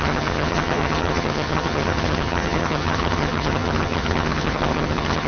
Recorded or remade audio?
remade